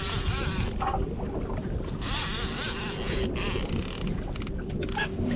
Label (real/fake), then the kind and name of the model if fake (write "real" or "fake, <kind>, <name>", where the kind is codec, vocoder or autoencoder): real